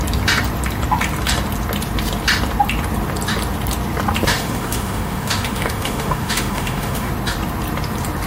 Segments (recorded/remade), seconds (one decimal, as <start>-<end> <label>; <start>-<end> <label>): 0.0-4.3 recorded; 4.3-7.1 remade; 7.1-8.3 recorded